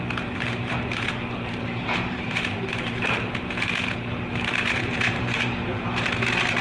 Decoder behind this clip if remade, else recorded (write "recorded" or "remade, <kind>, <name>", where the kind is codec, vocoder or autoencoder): remade, vocoder, BigVGAN v2